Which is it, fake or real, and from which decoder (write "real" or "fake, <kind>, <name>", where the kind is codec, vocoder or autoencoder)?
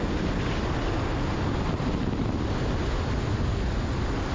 real